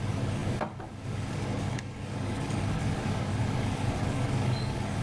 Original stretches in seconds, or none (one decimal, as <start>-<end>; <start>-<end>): none